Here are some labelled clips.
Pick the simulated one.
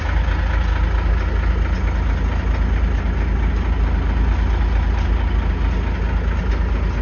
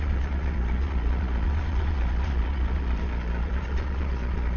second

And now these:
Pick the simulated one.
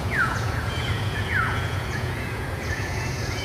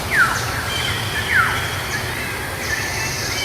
first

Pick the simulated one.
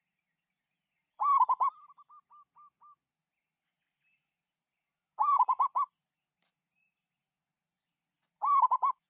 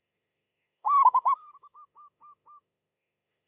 second